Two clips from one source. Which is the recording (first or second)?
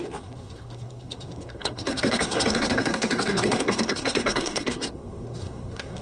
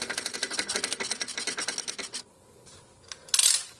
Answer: second